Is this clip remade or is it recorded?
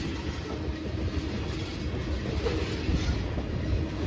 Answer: recorded